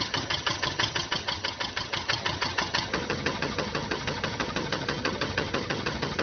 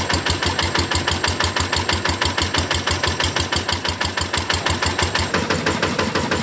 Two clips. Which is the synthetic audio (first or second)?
first